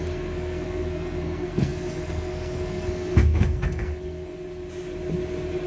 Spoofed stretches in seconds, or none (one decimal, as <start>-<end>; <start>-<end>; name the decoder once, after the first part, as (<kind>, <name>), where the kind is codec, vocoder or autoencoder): 0.0-4.3 (codec, SNAC)